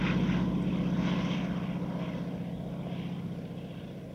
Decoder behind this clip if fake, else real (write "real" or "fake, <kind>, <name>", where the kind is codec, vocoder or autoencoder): real